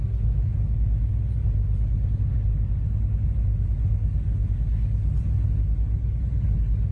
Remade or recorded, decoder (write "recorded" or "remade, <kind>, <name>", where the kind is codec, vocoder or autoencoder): recorded